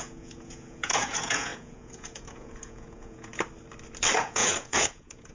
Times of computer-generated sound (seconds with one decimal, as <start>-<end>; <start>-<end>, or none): 0.0-3.3; 4.2-5.3